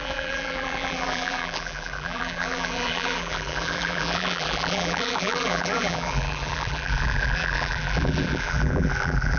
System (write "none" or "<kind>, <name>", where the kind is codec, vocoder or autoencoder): vocoder, BigVGAN v2